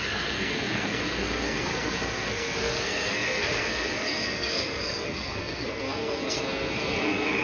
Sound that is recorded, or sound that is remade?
remade